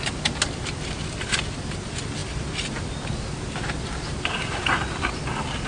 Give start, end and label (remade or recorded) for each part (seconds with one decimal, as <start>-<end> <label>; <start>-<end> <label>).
0.0-5.7 recorded